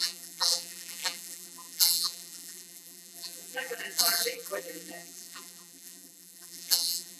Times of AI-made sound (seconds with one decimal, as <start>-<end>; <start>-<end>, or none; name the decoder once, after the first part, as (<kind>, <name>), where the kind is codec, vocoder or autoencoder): 0.0-7.2 (vocoder, BigVGAN v2)